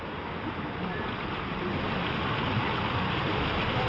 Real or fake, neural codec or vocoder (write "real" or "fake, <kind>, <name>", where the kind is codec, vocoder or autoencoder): real